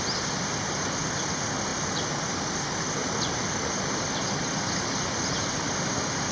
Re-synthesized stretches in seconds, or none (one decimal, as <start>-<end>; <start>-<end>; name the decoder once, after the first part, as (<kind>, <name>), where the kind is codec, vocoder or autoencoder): none